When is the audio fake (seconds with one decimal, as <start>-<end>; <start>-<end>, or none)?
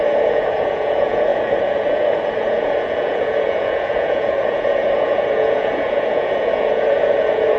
0.0-7.6